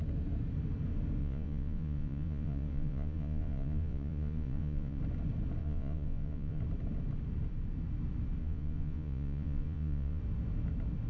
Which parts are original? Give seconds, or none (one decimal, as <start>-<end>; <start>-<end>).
0.0-1.2; 5.0-5.6; 6.6-8.4; 10.2-11.1